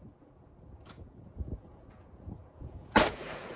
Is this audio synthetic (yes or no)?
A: yes